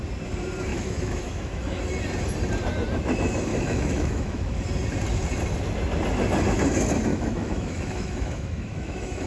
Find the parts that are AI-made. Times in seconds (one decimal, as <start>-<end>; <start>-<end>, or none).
0.7-1.8; 3.5-4.6; 7.1-9.3

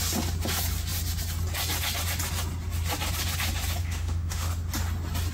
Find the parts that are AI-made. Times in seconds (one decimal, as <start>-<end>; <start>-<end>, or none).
3.8-4.5

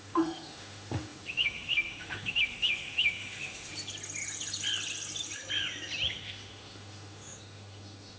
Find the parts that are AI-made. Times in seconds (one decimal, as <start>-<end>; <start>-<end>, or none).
0.0-3.7; 6.1-8.2

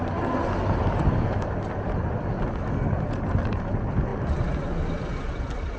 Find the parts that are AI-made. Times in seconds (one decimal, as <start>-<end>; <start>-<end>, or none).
none